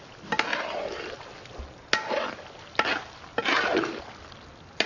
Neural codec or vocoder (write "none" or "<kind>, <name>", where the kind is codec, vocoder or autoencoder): none